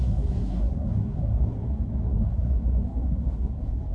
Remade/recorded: remade